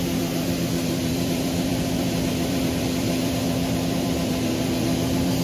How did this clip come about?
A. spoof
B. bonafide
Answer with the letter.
A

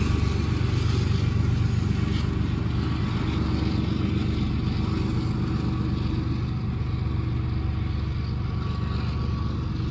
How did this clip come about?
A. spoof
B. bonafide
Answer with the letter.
B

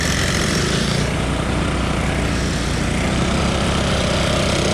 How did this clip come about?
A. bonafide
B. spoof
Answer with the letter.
A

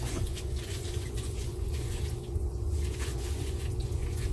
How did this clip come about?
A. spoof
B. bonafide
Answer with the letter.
A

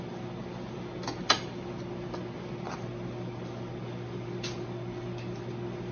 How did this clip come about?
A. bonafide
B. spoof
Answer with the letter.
A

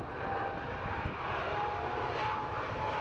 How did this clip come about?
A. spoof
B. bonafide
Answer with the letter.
B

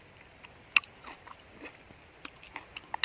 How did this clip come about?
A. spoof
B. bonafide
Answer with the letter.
B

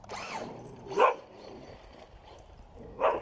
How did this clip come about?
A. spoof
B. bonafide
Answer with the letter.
A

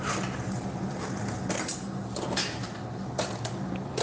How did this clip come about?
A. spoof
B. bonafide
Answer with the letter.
B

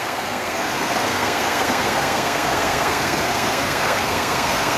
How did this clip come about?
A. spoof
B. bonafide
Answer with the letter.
A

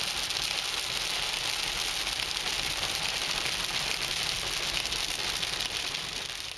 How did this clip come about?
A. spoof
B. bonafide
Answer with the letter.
B